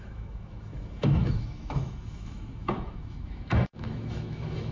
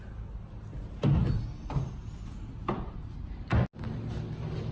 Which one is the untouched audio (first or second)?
second